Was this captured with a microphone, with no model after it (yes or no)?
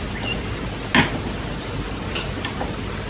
yes